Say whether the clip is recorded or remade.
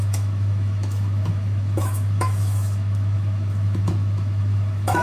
remade